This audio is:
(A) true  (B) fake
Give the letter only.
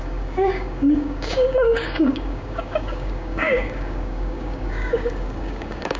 B